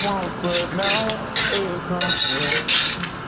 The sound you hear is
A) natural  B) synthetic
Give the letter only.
A